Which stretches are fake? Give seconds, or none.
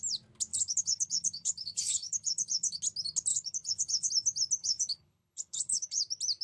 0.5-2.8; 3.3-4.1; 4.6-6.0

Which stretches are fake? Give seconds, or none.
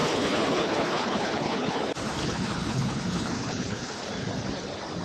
0.0-1.8; 2.2-4.0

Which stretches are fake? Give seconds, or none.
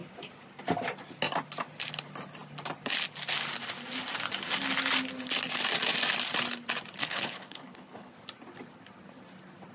7.0-8.1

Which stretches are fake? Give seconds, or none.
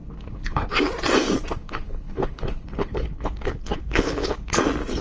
0.0-0.7; 1.6-4.6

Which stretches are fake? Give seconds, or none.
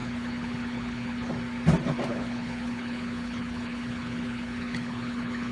0.0-1.3; 2.1-5.5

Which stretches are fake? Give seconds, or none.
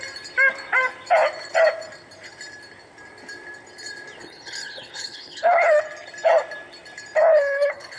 4.2-5.8; 7.3-8.0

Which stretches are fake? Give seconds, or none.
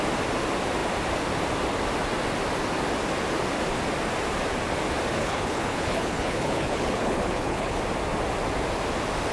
5.2-7.8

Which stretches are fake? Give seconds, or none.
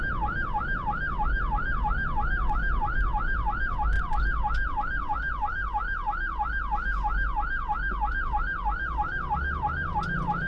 none